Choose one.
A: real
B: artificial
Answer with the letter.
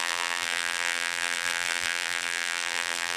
B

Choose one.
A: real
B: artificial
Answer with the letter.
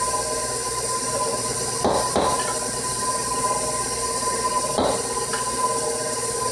A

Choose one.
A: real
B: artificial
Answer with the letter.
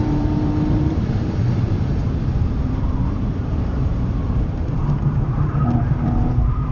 B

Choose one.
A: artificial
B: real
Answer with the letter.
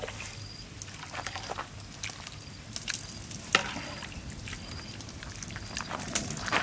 B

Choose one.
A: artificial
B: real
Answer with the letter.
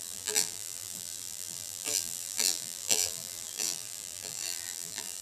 A